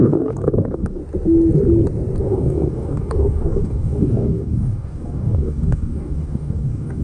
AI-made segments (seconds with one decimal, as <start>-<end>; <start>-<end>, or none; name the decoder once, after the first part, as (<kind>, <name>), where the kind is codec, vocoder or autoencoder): 0.0-1.0 (codec, DAC); 2.2-7.0